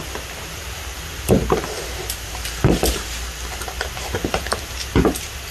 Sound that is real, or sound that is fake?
fake